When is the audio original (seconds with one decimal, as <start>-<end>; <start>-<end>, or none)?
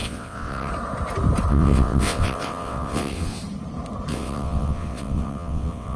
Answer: 0.7-1.5; 3.4-4.1